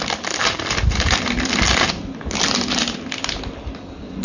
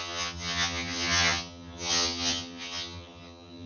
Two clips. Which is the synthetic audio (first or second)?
second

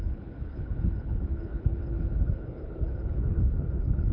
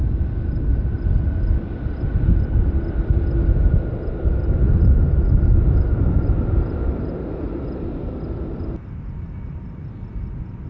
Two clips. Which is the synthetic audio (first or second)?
first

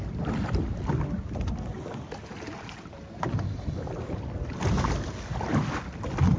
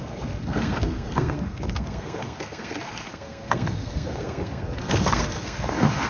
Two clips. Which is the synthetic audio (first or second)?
second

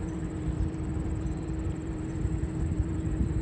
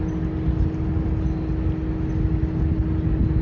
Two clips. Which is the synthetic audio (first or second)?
first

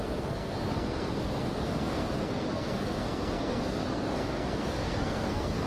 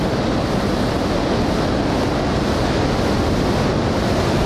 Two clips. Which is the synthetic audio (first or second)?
first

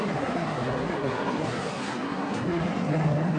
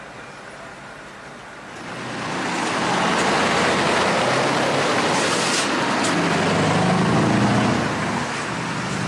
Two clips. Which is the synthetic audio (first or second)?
first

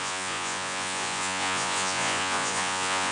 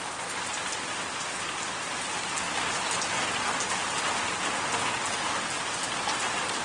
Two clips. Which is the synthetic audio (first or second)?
first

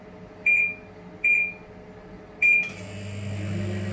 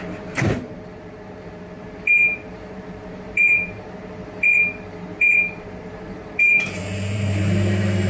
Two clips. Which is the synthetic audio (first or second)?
second